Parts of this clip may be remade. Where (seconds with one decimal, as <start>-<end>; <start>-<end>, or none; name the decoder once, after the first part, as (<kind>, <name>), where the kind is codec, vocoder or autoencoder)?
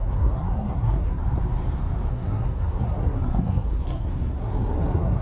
0.0-1.2 (codec, SNAC); 2.1-5.2